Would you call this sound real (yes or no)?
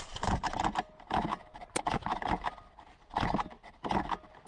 yes